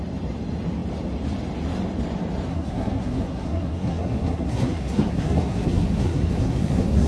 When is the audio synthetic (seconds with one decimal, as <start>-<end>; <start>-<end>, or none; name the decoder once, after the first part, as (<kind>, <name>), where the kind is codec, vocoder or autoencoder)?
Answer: 2.5-7.1 (codec, SNAC)